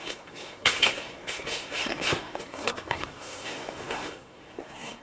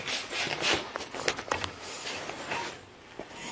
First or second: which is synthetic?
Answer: first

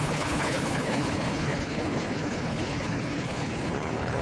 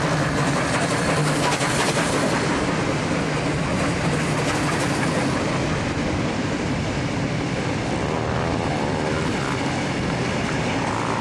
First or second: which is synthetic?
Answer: first